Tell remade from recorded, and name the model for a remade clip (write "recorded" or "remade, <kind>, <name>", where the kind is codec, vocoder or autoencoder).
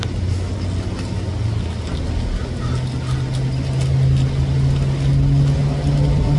recorded